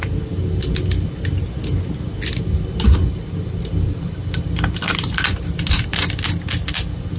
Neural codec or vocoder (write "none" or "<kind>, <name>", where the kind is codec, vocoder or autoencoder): none